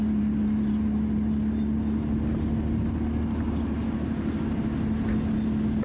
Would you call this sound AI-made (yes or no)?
no